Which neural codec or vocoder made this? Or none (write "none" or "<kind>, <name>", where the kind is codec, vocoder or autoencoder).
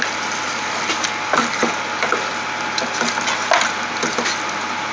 none